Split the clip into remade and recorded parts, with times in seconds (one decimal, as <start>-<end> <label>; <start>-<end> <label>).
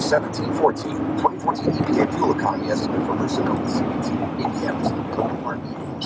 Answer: 0.0-2.9 recorded; 2.9-5.5 remade; 5.5-6.1 recorded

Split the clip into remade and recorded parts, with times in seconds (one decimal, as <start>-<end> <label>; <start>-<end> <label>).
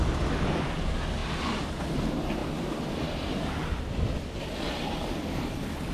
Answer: 0.0-5.9 recorded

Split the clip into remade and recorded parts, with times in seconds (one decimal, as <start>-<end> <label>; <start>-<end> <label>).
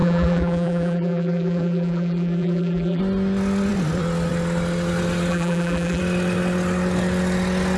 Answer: 0.0-3.0 remade; 3.0-5.3 recorded; 5.3-6.0 remade; 6.0-7.8 recorded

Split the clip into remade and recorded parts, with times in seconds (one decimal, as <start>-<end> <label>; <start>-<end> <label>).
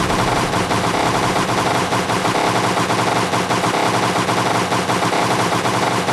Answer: 0.0-2.2 remade; 2.2-5.2 recorded; 5.2-6.1 remade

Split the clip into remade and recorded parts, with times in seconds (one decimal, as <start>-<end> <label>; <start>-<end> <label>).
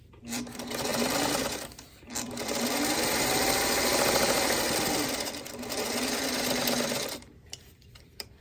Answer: 0.0-8.4 remade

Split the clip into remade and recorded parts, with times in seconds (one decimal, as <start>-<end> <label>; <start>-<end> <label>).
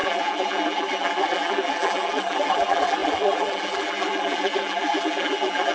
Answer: 0.0-5.7 remade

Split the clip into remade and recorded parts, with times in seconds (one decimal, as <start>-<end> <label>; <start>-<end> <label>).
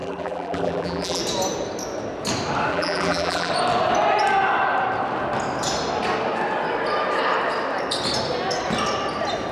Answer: 0.0-1.2 remade; 1.2-2.7 recorded; 2.7-3.5 remade; 3.5-9.5 recorded